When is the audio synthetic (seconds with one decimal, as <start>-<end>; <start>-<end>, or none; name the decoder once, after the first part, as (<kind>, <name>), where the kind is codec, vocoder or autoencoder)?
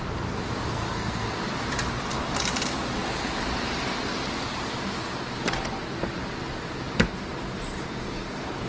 0.7-1.3 (codec, SNAC)